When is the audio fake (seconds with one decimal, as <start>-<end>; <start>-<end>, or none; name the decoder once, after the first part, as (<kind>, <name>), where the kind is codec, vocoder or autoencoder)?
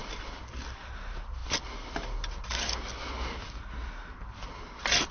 none